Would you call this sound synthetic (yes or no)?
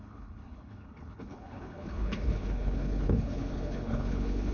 yes